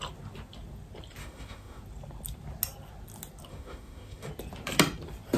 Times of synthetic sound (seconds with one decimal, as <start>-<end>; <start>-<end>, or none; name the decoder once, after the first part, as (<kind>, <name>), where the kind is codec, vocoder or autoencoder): 1.2-1.8 (autoencoder, DAC-VAE); 3.5-4.3